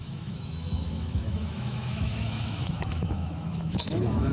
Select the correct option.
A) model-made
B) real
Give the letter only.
A